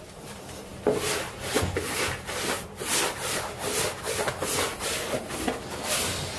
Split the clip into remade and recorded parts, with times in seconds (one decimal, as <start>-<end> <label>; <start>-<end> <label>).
0.0-6.4 recorded